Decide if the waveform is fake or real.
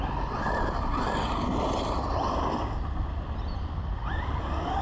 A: real